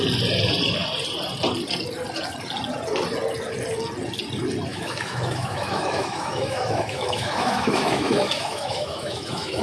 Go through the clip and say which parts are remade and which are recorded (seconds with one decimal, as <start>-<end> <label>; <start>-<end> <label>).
0.0-4.7 recorded; 4.7-9.6 remade